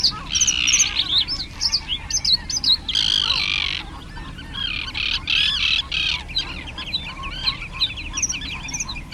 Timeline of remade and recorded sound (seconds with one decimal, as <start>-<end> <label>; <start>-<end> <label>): 0.0-9.1 recorded